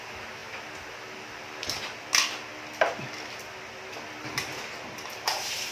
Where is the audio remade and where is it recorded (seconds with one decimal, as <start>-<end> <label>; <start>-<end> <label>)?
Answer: 0.0-5.7 recorded